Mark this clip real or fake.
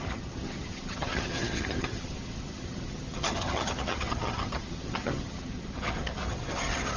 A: fake